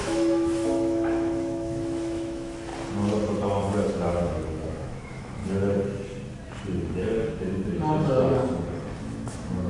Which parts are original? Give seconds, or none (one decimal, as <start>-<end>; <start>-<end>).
2.7-3.9; 5.4-7.3; 8.4-9.0